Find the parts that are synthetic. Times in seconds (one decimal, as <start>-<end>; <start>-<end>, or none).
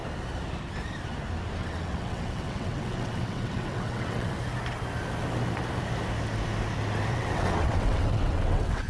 1.6-4.3; 7.1-8.9